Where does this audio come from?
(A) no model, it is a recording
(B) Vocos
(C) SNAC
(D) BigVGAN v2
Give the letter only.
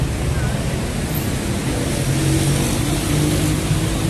A